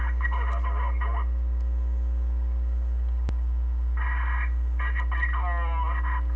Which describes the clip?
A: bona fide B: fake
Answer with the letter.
A